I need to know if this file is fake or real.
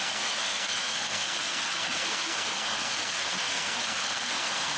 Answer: fake